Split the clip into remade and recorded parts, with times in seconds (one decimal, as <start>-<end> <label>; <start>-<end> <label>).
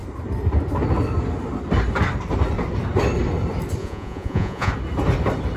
0.0-3.8 recorded; 3.8-4.7 remade; 4.7-5.6 recorded